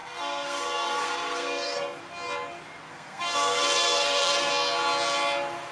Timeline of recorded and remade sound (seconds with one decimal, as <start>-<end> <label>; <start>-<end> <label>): 0.0-2.0 remade; 2.0-2.9 recorded; 2.9-4.5 remade; 4.5-5.7 recorded